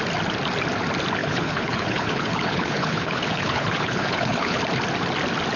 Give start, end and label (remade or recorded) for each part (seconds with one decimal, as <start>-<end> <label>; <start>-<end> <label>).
0.0-1.2 recorded; 1.2-4.6 remade; 4.6-5.6 recorded